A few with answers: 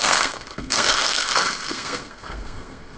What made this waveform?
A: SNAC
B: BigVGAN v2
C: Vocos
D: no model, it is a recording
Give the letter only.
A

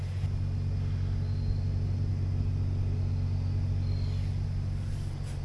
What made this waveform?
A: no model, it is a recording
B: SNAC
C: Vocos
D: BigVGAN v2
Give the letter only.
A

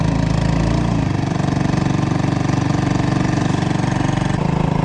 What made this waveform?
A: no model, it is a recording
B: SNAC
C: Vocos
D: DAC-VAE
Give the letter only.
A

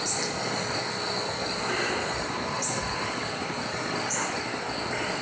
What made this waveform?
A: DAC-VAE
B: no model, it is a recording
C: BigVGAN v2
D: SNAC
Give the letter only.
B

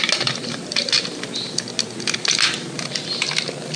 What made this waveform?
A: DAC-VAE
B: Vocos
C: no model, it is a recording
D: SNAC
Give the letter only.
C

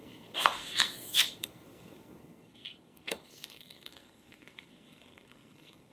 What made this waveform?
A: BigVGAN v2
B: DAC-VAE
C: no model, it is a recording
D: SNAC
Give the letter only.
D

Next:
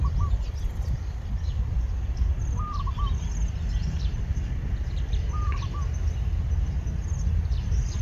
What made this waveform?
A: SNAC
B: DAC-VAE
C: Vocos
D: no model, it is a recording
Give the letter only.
D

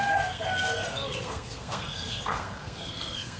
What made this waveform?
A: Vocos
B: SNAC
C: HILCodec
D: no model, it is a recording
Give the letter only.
B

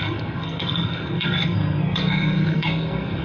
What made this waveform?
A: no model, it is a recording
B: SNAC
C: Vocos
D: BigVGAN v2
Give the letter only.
B